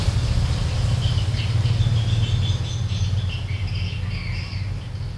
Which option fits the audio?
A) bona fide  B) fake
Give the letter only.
A